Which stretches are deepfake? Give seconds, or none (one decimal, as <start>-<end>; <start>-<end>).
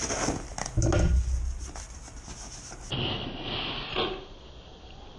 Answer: none